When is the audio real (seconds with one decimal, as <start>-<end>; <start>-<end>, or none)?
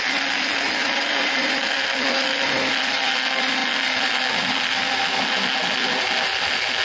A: 0.0-0.8; 2.0-6.8